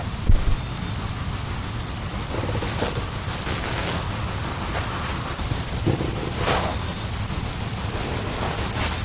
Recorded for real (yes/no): yes